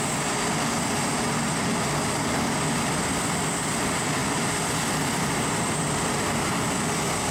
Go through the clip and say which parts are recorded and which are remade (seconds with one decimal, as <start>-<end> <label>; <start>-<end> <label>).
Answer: 0.0-7.3 recorded